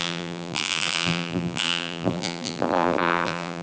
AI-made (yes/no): yes